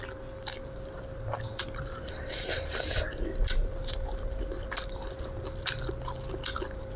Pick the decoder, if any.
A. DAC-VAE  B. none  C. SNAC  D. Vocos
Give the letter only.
B